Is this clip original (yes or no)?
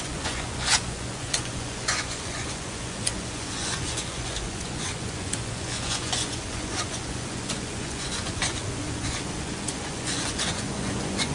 no